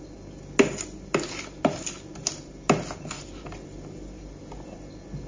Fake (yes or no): no